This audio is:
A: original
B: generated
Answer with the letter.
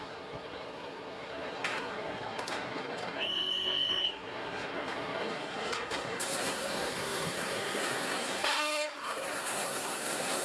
B